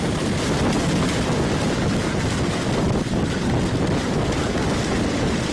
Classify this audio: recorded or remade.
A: recorded